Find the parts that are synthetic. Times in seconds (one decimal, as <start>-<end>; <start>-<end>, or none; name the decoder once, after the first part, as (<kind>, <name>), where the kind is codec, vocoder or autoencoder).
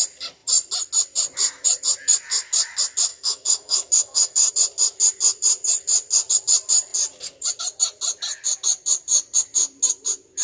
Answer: 3.1-4.5 (autoencoder, DAC-VAE)